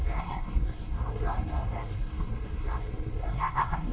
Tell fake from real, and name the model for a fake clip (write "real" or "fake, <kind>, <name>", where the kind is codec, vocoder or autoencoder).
fake, codec, SNAC